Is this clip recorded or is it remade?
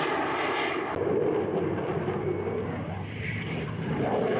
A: recorded